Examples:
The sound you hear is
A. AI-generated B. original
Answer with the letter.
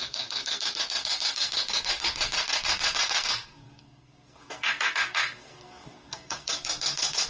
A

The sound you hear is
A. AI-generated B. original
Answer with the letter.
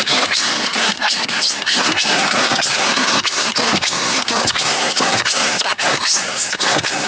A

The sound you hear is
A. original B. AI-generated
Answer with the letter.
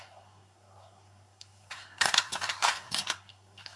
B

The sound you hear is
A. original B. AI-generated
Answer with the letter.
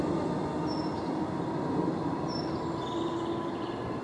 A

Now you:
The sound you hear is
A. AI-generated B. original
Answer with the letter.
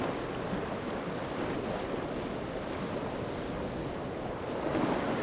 B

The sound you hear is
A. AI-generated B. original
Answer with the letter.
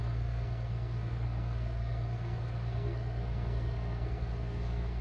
A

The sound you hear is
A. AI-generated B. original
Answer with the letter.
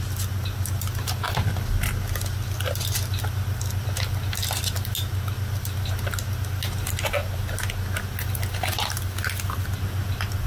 B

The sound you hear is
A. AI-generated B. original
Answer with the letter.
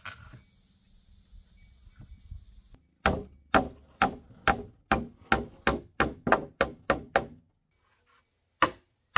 B